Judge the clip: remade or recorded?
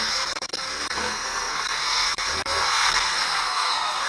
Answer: remade